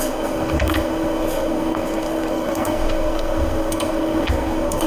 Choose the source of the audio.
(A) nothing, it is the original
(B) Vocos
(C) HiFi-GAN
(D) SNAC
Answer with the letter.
D